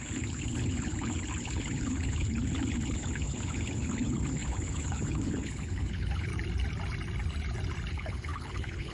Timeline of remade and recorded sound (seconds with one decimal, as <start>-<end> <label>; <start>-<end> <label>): 0.0-6.3 remade; 6.3-7.9 recorded; 7.9-8.9 remade